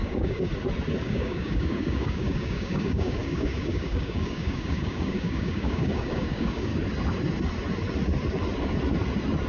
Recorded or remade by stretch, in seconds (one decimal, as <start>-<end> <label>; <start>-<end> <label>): 0.0-0.5 remade; 0.5-1.0 recorded; 1.0-6.7 remade; 6.7-9.5 recorded